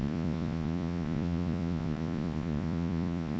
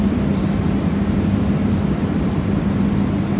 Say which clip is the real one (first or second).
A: second